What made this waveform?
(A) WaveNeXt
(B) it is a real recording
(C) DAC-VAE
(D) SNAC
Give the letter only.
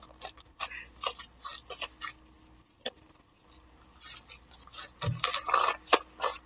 B